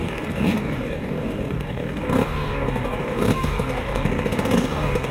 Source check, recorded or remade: remade